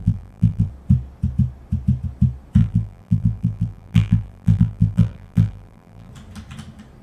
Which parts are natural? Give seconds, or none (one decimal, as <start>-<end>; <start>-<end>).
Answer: 0.7-2.6; 6.1-7.0